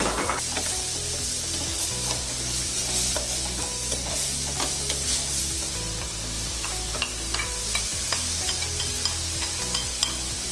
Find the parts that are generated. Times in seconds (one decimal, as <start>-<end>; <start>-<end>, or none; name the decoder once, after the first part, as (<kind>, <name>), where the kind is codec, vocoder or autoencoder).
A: none